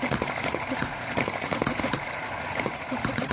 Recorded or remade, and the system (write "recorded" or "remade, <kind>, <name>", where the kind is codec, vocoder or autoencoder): remade, vocoder, Vocos